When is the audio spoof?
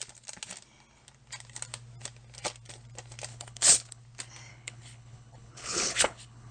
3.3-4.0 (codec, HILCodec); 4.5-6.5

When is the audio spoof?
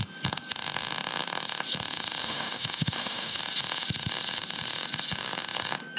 2.2-3.4 (autoencoder, DAC-VAE)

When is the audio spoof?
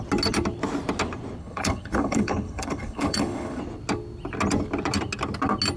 1.4-3.6 (codec, HILCodec)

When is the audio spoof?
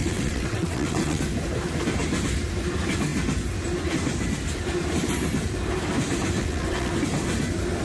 0.0-1.2 (vocoder, WaveNeXt); 6.4-6.9